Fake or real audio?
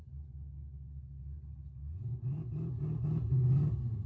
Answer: real